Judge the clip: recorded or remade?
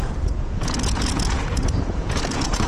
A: remade